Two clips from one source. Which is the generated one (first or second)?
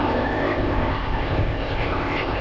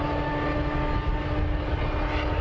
first